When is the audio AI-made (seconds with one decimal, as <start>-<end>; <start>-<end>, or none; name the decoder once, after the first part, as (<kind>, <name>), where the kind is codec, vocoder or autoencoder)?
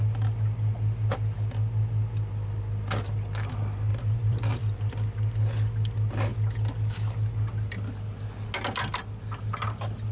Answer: 3.9-4.9 (vocoder, BigVGAN v2)